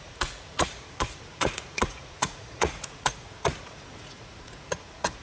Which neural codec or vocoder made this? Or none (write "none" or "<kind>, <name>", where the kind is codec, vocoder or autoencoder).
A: vocoder, Vocos